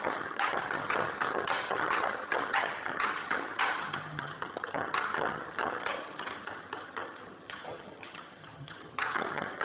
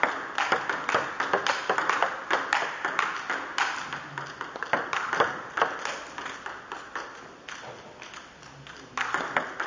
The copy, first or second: first